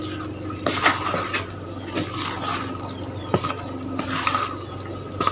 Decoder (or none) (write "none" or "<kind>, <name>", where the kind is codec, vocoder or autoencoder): vocoder, BigVGAN v2